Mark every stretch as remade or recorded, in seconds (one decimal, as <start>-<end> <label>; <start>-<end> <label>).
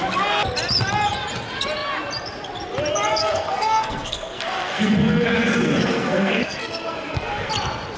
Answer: 0.0-3.2 recorded; 3.2-7.5 remade; 7.5-8.0 recorded